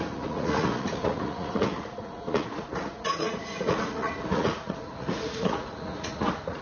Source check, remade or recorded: remade